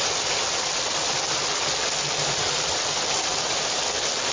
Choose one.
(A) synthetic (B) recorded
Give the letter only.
B